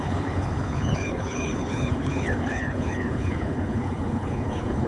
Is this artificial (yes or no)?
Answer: yes